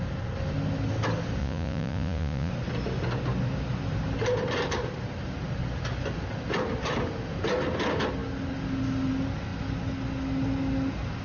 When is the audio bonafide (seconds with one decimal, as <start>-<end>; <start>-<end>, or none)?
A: 0.0-1.4; 2.5-11.2